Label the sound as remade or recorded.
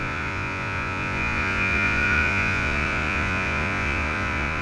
remade